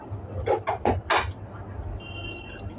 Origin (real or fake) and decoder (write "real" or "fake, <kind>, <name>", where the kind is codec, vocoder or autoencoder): real